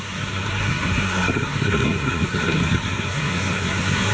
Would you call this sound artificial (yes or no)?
yes